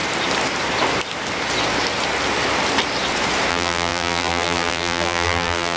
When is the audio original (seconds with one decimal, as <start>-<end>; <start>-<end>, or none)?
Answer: 0.0-3.5